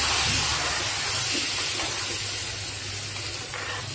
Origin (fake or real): real